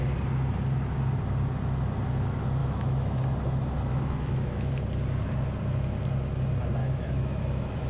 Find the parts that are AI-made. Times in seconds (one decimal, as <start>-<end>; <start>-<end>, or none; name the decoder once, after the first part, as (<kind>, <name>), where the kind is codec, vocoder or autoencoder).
2.6-3.2 (autoencoder, DAC-VAE); 3.9-4.7; 6.8-7.9